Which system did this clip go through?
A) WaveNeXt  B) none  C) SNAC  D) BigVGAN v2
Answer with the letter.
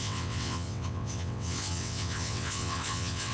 A